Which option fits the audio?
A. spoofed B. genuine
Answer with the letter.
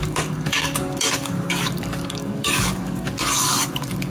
A